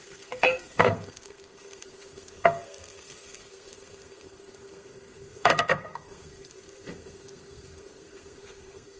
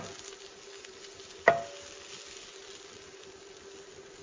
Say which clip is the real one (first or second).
second